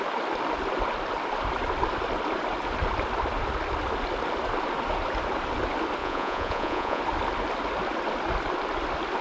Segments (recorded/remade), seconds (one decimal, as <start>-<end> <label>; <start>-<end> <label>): 0.0-6.0 recorded; 6.0-7.0 remade; 7.0-9.2 recorded